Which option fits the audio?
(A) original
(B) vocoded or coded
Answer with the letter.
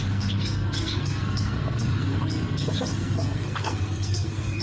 B